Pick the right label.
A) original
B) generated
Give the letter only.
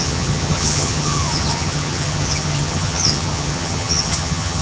B